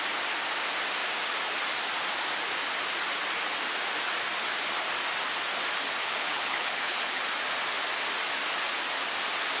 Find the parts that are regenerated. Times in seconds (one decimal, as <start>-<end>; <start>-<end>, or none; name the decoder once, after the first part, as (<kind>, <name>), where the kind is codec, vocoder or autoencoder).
6.0-7.2 (codec, HILCodec)